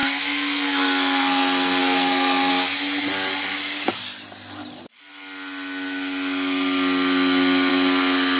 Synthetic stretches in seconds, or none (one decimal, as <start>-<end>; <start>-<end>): 0.0-2.5